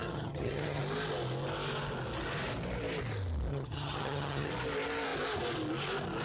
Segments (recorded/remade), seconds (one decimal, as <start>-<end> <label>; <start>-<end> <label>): 0.0-0.8 remade; 0.8-3.5 recorded; 3.5-4.5 remade; 4.5-6.2 recorded